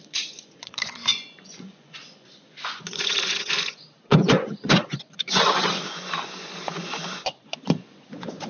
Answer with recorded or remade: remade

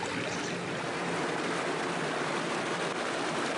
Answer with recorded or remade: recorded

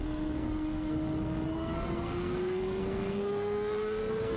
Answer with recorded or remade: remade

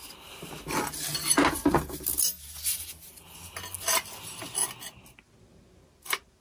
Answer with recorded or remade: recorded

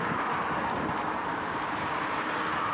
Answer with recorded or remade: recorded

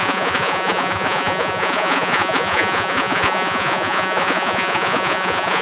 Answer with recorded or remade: remade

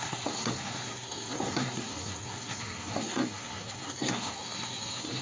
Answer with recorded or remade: remade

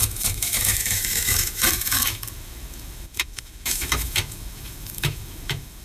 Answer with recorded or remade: remade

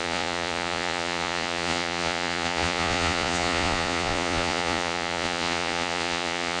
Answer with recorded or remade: remade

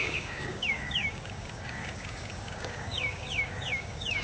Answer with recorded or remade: remade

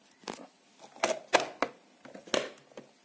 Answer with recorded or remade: recorded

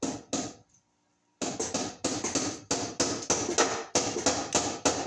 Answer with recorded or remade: recorded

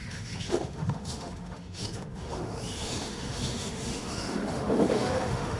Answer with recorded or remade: remade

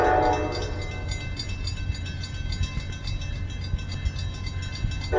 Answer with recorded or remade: recorded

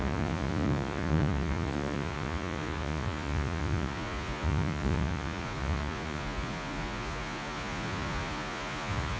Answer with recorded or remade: remade